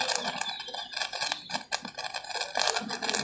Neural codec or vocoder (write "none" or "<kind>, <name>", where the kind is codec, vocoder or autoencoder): none